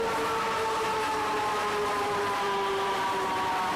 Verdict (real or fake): real